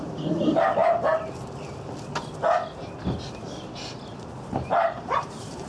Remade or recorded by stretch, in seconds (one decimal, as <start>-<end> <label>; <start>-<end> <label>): 0.0-0.8 remade; 0.8-4.2 recorded; 4.2-5.7 remade